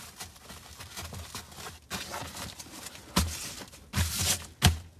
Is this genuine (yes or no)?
yes